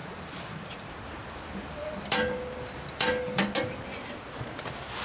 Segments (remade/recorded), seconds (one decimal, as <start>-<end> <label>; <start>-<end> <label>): 0.0-0.7 remade; 0.7-1.2 recorded; 1.2-4.2 remade; 4.2-5.0 recorded